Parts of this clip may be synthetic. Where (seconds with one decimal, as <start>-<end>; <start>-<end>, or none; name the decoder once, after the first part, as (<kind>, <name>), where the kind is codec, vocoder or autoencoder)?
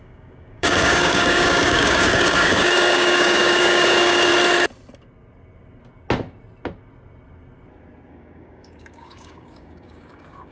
0.0-4.3 (codec, DAC); 8.1-10.5